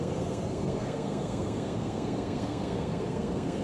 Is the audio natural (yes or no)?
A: no